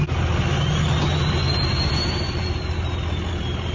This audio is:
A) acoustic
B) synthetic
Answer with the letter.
A